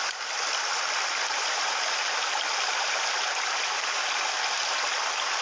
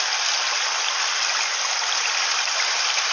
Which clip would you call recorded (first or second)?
first